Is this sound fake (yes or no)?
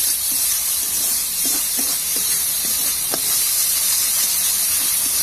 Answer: yes